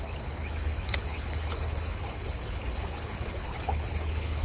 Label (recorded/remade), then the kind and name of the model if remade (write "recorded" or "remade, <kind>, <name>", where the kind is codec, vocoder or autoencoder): remade, codec, HILCodec